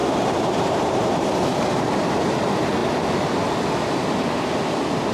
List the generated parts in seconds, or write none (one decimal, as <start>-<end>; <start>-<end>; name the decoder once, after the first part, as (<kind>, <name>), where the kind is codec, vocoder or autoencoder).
0.0-2.2 (vocoder, BigVGAN v2)